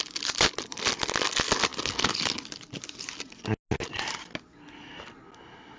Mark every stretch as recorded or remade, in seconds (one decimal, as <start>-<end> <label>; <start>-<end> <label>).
0.0-5.8 recorded